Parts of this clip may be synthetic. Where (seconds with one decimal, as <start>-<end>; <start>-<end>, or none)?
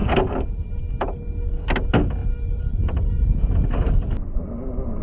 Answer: 2.2-3.9